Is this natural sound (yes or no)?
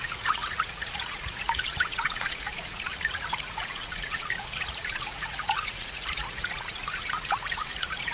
no